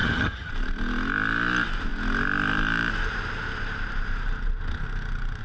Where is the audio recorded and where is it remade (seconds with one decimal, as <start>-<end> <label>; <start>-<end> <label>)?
0.0-0.5 remade; 0.5-5.4 recorded